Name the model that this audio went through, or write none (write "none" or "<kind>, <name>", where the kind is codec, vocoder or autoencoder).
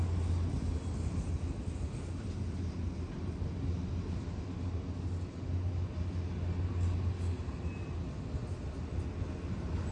none